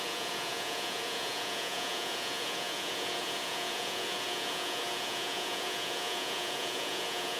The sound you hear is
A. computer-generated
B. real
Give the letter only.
A